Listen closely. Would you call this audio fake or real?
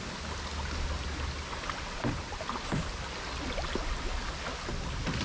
real